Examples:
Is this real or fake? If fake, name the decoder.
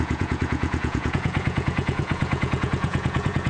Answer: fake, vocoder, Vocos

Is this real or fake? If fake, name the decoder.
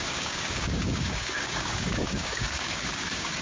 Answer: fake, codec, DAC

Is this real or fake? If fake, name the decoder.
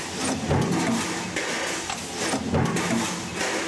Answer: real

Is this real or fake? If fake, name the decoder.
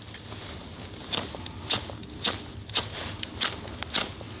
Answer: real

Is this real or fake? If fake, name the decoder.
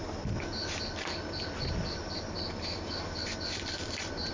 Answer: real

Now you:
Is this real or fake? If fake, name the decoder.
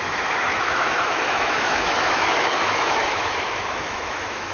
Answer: fake, autoencoder, DAC-VAE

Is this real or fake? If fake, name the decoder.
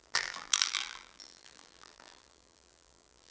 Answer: fake, vocoder, BigVGAN v2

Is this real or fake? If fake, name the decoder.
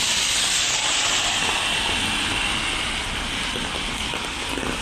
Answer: real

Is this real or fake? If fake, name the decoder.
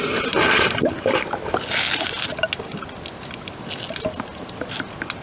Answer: real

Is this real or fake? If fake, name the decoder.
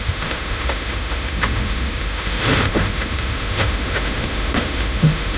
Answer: fake, autoencoder, DAC-VAE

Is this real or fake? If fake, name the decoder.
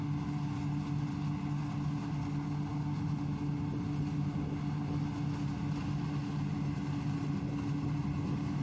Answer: real